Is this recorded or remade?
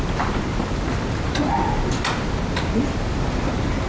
recorded